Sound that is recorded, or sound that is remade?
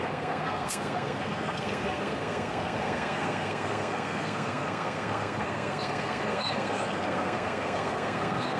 remade